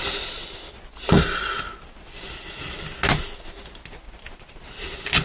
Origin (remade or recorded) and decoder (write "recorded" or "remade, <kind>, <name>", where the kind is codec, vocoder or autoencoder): recorded